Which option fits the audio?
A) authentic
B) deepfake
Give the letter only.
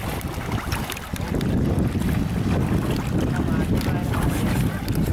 A